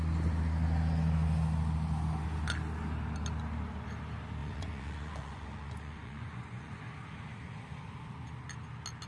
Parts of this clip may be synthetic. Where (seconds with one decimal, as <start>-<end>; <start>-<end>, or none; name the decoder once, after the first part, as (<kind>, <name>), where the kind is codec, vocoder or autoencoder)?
4.4-6.9 (vocoder, Vocos)